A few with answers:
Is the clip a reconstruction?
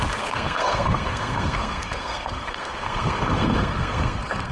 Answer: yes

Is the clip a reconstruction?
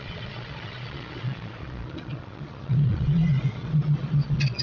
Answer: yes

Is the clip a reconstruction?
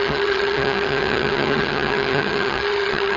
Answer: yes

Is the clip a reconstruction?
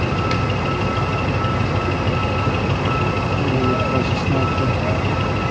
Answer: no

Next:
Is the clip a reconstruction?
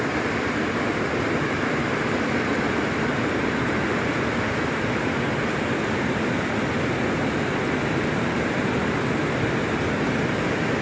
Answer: no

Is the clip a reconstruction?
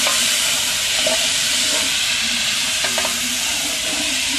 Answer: yes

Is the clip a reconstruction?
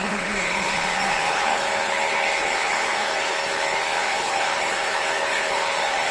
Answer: yes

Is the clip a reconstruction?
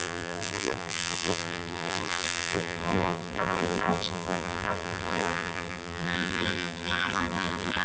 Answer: yes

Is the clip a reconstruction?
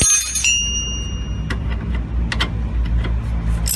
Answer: no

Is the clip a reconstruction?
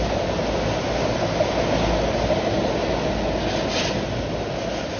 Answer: no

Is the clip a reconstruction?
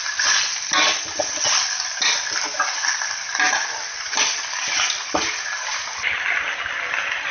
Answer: no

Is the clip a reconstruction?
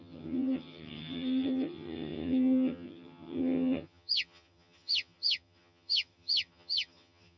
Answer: yes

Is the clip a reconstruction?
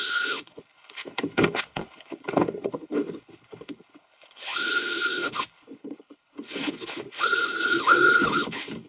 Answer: yes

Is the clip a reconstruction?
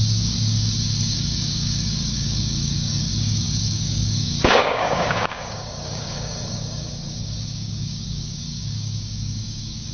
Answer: yes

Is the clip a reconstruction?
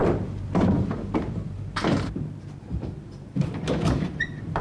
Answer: yes